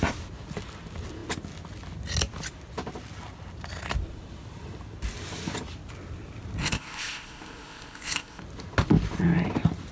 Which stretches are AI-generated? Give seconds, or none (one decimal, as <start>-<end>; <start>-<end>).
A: 6.6-8.4